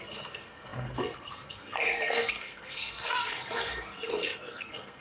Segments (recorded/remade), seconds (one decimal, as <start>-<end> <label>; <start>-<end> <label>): 0.0-5.0 remade